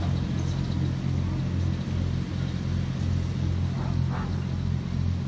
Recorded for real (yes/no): yes